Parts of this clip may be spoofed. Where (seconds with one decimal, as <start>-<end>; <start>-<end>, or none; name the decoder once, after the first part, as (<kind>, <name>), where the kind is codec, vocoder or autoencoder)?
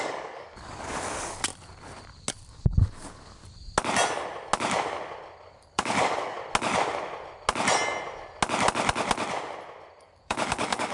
0.0-1.5 (codec, DAC); 2.5-3.4; 5.5-6.4; 10.0-10.9